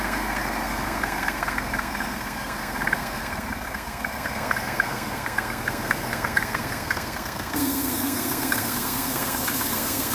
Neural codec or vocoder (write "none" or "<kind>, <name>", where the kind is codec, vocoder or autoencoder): codec, SNAC